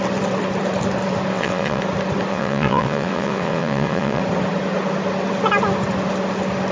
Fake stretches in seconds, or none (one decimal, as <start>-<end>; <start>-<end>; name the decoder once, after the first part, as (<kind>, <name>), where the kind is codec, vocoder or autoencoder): 1.3-1.8 (vocoder, WaveNeXt); 2.3-4.2